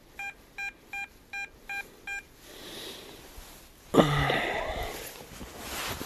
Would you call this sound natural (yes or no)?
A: yes